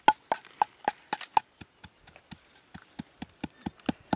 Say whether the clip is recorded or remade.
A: recorded